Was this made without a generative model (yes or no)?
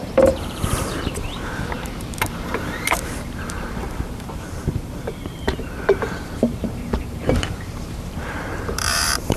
no